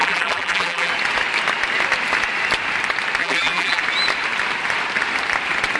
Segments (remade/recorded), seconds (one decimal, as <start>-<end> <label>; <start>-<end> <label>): 0.0-0.9 remade; 0.9-3.2 recorded; 3.2-3.8 remade; 3.8-5.8 recorded